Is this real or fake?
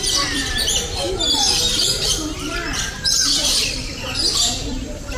fake